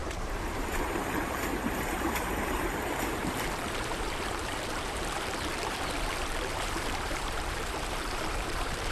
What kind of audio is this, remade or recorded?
remade